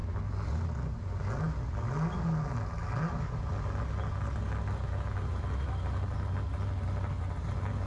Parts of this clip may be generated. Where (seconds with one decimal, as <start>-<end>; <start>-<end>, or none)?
none